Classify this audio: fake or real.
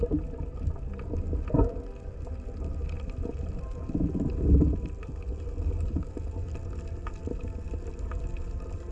real